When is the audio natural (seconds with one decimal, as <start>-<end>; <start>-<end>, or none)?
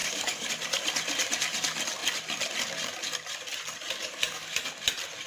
0.5-4.0; 4.7-5.3